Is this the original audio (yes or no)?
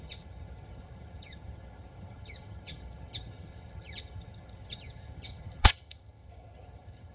no